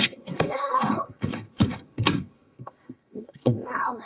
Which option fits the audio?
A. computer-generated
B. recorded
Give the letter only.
A